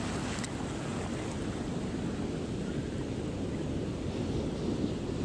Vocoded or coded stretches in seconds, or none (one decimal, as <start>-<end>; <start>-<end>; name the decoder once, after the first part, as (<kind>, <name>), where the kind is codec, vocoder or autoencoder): none